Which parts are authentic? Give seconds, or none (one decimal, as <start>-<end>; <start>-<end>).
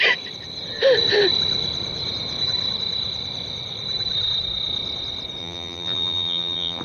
0.0-5.4